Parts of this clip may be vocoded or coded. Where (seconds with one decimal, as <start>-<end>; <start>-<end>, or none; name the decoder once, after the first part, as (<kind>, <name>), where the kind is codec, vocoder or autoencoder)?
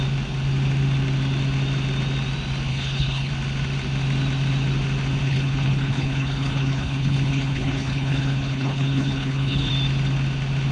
2.7-3.3 (codec, HILCodec); 5.2-9.7